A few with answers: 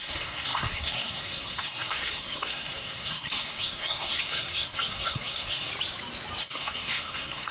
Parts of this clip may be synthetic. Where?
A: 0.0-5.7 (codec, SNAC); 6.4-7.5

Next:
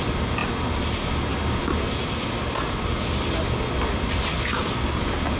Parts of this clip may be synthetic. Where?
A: 4.3-5.0 (codec, DAC)

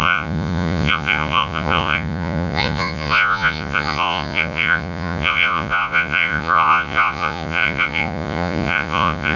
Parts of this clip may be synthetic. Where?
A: 0.0-9.4 (vocoder, Vocos)

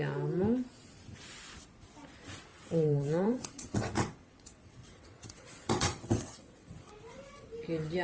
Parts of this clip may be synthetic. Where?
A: 2.5-6.9 (vocoder, WaveNeXt)

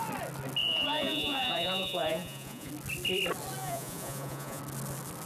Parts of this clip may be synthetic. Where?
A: 0.6-2.7 (vocoder, Vocos); 3.6-4.6

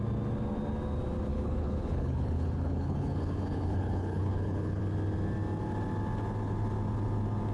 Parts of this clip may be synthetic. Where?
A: 1.3-4.8 (codec, HILCodec)